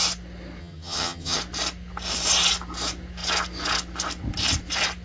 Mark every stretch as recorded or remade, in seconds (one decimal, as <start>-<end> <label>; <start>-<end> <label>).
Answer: 0.0-0.6 recorded; 0.6-1.4 remade; 1.4-5.0 recorded